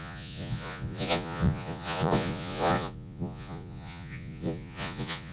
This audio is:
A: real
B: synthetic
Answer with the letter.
B